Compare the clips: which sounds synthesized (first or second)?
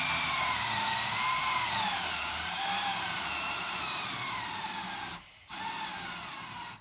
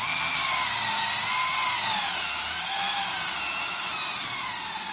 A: first